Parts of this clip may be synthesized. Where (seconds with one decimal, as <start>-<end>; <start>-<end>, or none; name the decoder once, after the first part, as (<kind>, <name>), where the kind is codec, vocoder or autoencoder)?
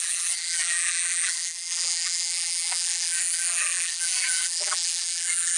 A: 0.0-5.6 (vocoder, BigVGAN v2)